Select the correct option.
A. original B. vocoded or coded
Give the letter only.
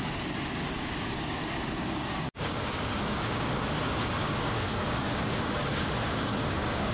B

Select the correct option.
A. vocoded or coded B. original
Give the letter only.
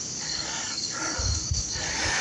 A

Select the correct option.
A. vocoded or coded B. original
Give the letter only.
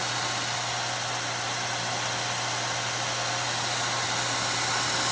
B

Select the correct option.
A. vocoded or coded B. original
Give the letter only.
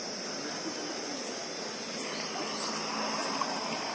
B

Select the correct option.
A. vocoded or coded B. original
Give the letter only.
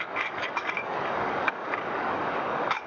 A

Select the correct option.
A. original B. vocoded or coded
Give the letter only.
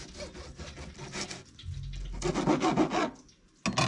A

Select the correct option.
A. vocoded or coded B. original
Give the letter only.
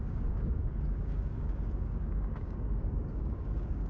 A